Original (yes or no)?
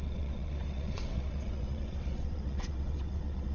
no